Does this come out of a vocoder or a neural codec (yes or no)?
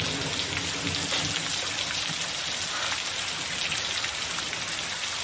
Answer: no